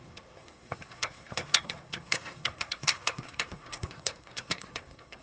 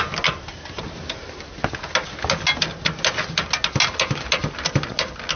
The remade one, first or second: first